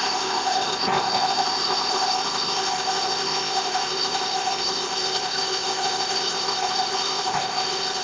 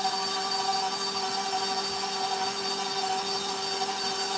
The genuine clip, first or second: second